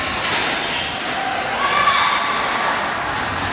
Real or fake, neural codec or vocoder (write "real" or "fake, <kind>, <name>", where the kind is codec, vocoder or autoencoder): real